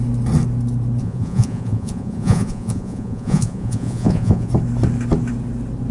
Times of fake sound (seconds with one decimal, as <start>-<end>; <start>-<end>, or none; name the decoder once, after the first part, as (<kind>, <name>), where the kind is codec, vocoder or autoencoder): 1.0-4.5 (vocoder, Vocos)